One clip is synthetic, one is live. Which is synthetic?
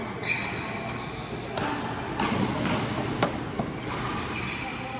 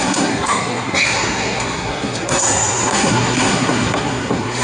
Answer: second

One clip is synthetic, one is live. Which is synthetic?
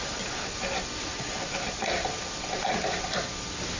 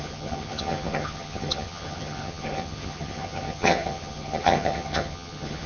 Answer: second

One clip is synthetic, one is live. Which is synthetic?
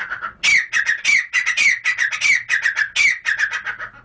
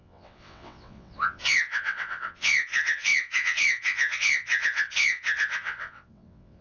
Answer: second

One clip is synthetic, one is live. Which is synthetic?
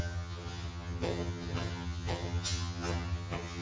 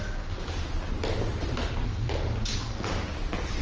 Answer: first